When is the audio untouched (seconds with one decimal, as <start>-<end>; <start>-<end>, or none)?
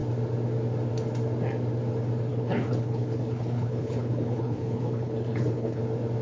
0.0-2.3; 5.8-6.2